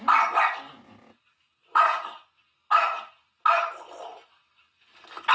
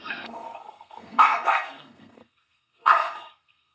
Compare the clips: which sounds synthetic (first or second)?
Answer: second